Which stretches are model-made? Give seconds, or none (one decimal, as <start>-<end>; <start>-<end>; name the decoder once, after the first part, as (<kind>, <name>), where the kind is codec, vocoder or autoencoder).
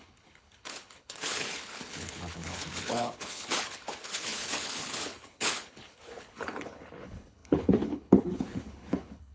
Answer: 0.0-9.3 (codec, HILCodec)